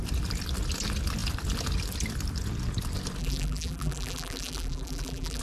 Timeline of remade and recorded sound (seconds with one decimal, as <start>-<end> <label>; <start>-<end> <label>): 0.0-3.2 recorded; 3.2-5.4 remade